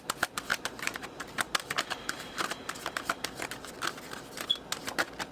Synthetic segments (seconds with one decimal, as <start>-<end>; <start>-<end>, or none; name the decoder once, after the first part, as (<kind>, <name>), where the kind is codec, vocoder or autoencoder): 0.5-3.7 (vocoder, BigVGAN v2)